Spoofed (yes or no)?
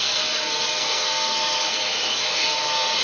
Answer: yes